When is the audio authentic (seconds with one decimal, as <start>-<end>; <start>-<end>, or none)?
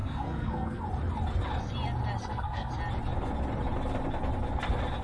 0.8-2.2; 2.7-5.0